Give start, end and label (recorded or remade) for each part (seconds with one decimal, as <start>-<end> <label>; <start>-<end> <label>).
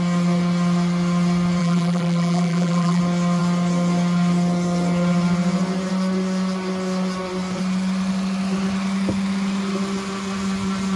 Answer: 0.0-1.6 recorded; 1.6-3.0 remade; 3.0-11.0 recorded